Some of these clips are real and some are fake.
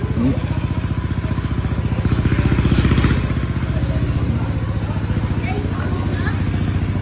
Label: real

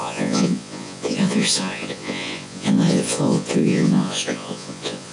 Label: fake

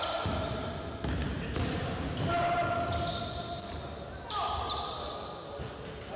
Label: real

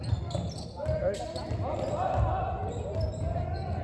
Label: real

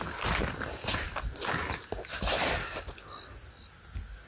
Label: real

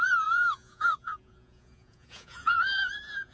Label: fake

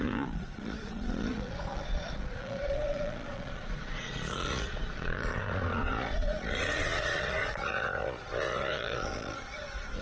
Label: fake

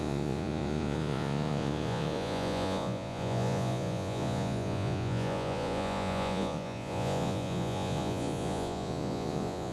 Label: fake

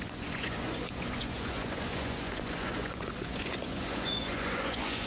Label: fake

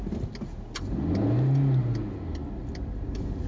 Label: real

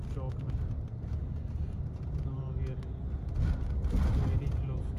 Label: real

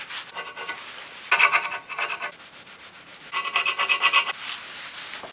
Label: real